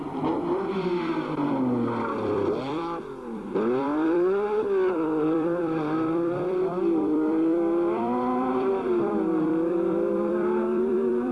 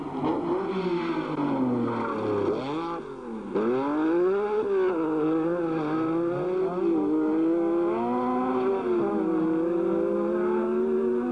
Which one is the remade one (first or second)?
first